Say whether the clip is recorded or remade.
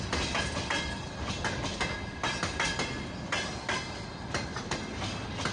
recorded